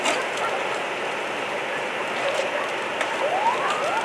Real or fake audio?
real